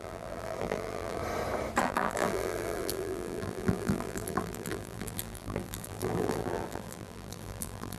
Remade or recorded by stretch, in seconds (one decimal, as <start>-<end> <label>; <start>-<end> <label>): 0.0-1.2 remade; 1.2-1.8 recorded; 1.8-8.0 remade